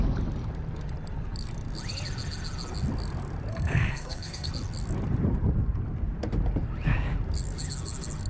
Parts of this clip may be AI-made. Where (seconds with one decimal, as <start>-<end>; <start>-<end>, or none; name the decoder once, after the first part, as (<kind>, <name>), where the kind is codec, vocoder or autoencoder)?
3.5-4.5 (codec, SNAC)